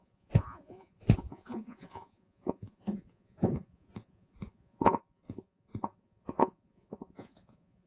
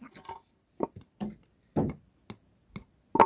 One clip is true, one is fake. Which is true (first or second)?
second